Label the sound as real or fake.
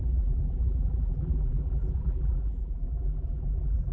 fake